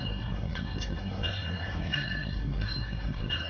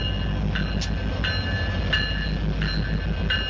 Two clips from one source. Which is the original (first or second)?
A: second